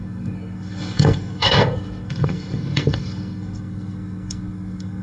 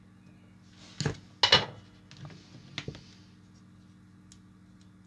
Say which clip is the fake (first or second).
first